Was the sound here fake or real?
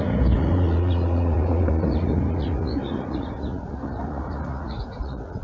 fake